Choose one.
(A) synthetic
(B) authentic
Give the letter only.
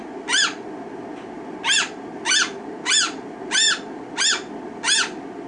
B